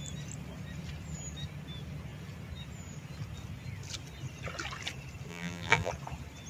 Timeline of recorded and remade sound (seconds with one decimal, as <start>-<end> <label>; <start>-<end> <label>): 0.0-5.3 recorded; 5.3-5.9 remade; 5.9-6.5 recorded